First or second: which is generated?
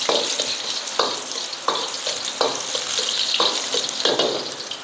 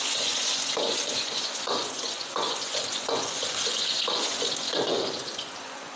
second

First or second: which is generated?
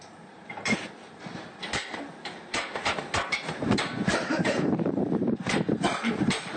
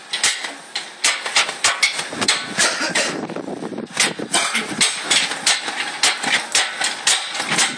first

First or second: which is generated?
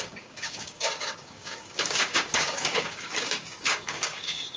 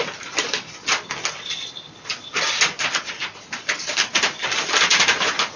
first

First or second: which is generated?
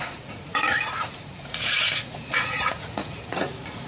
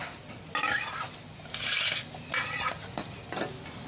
first